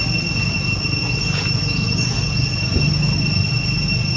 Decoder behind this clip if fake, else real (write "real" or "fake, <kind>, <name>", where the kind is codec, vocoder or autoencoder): real